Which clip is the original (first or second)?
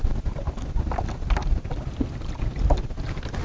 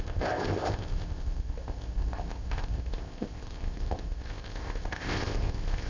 first